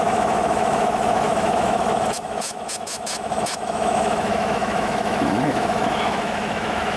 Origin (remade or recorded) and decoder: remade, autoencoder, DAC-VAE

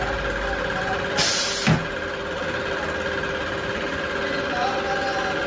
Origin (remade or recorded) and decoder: recorded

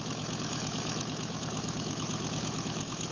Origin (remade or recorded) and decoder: remade, autoencoder, DAC-VAE